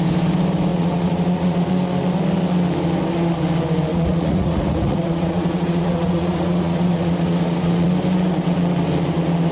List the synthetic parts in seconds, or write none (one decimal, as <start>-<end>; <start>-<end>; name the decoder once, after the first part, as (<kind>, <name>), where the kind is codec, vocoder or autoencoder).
0.7-1.7 (vocoder, Vocos); 3.9-7.9